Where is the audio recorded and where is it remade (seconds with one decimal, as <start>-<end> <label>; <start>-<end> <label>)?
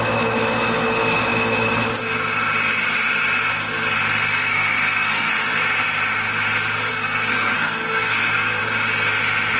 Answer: 0.0-4.3 recorded; 4.3-5.3 remade; 5.3-6.9 recorded; 6.9-8.6 remade; 8.6-9.6 recorded